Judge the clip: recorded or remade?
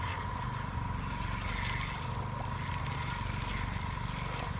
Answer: recorded